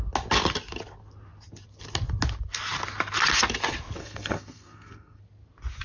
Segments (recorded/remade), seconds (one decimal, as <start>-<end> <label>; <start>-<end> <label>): 0.0-4.0 recorded; 4.0-5.2 remade; 5.2-5.8 recorded